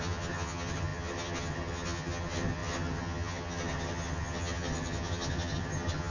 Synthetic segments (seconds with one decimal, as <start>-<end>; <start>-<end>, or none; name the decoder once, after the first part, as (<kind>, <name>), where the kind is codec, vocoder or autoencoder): 0.0-6.1 (vocoder, HiFi-GAN)